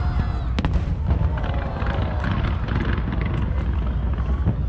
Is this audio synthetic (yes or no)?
no